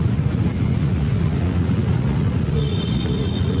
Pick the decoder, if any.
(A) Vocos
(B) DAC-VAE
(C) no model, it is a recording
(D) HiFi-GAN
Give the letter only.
A